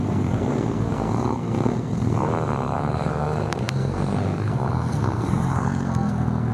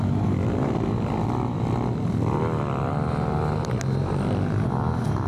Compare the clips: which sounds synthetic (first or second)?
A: first